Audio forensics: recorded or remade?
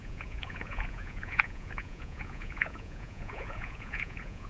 remade